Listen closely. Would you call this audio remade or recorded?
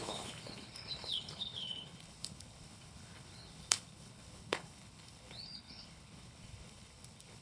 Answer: remade